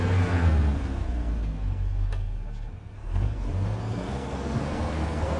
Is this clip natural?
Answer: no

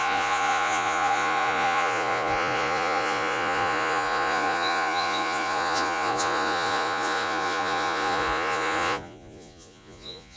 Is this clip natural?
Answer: no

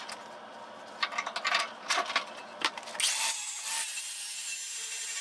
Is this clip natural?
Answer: yes